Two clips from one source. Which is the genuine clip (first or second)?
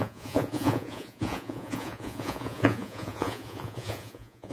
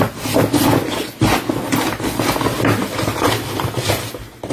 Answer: second